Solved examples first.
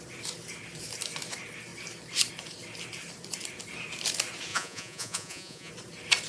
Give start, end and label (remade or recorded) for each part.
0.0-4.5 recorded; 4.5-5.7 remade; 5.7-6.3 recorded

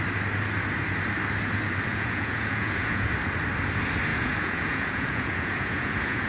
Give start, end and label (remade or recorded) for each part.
0.0-1.9 recorded; 1.9-3.1 remade; 3.1-4.1 recorded; 4.1-6.3 remade

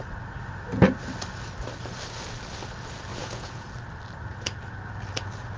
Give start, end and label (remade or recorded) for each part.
0.0-3.1 recorded; 3.1-3.7 remade; 3.7-5.6 recorded